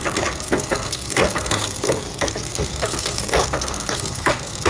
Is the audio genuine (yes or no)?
no